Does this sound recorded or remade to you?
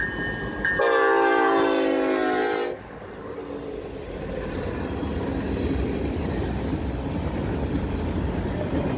recorded